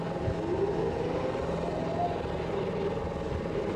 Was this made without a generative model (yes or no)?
yes